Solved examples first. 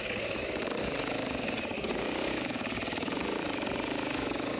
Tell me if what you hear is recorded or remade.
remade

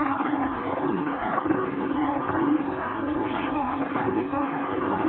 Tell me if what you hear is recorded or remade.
remade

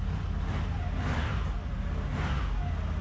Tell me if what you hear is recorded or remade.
recorded